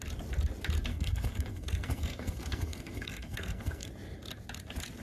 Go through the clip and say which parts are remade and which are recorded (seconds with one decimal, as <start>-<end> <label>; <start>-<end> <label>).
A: 0.0-0.9 recorded; 0.9-3.9 remade; 3.9-5.0 recorded